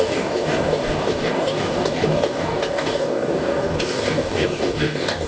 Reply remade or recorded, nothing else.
remade